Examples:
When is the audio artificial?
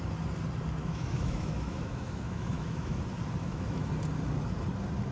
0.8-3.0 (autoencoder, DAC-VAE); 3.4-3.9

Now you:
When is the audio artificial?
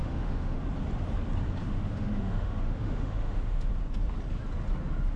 0.0-0.6 (autoencoder, DAC-VAE); 1.6-3.7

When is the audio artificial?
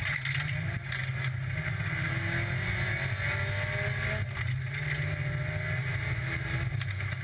none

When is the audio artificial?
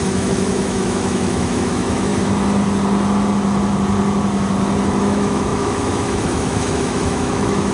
0.0-2.1 (autoencoder, DAC-VAE); 5.0-7.7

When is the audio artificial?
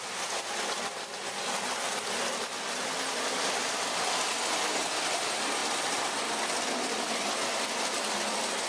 none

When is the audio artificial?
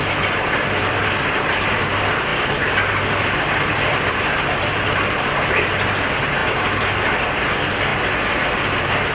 0.0-6.4 (vocoder, BigVGAN v2); 7.0-7.9; 8.5-9.1